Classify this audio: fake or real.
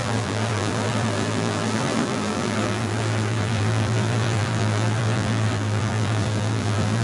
fake